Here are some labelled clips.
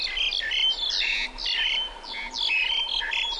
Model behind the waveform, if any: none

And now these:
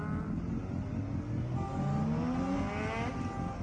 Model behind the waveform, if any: none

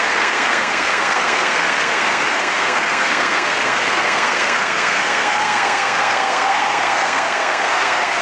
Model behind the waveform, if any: codec, SNAC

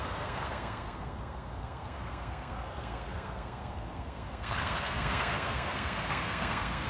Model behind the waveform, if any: codec, SNAC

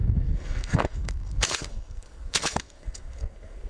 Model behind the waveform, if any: codec, SNAC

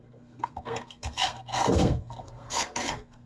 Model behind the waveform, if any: codec, SNAC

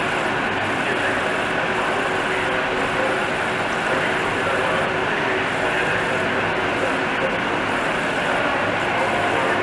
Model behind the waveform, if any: none